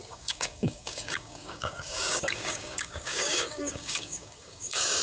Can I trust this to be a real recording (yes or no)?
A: no